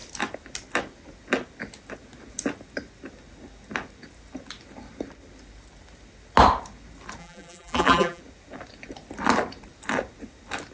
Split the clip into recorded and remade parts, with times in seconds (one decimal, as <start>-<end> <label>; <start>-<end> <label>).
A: 0.0-7.2 recorded; 7.2-8.2 remade; 8.2-10.7 recorded